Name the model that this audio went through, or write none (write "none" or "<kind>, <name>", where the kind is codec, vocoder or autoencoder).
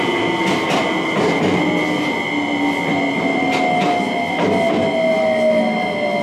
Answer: none